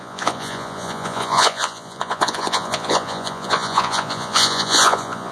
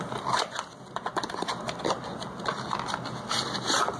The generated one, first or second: first